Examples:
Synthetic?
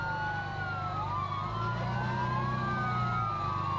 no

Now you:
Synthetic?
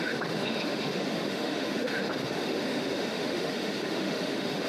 yes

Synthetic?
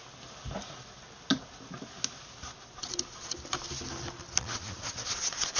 no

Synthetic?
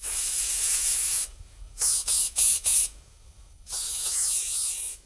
yes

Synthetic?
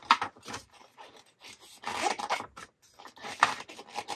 no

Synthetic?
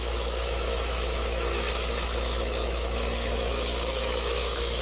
yes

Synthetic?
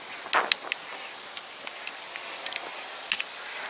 no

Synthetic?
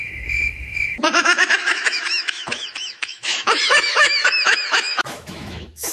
yes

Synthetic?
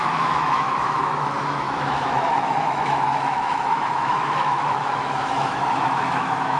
yes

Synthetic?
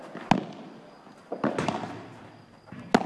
no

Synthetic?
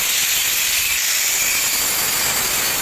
no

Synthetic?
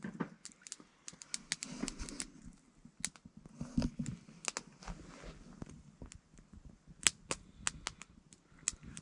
no